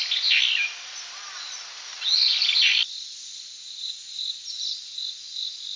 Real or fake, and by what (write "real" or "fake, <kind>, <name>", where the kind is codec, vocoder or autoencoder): real